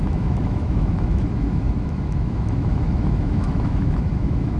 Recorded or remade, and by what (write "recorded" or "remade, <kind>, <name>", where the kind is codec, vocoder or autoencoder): remade, autoencoder, DAC-VAE